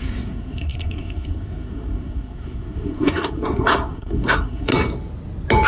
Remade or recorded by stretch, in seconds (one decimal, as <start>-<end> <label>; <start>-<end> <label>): 0.0-4.7 remade; 4.7-5.7 recorded